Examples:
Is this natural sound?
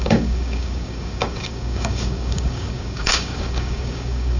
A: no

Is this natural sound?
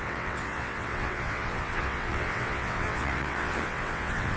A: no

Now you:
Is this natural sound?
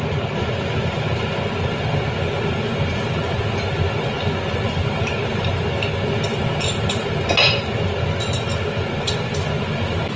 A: yes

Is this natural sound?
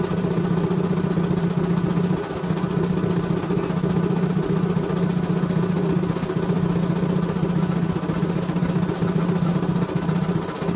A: yes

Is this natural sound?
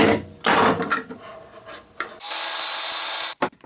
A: yes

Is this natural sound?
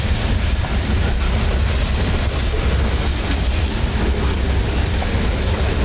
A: yes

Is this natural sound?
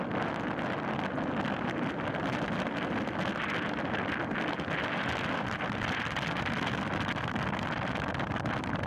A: yes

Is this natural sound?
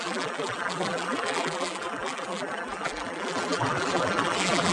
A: no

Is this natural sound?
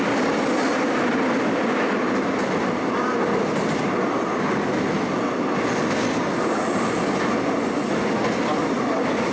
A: yes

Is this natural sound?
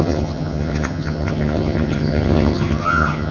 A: no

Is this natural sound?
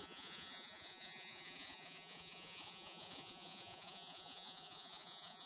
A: no